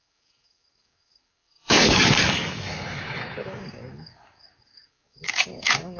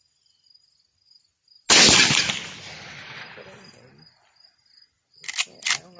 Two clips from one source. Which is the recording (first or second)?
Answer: second